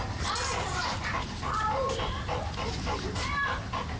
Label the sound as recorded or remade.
recorded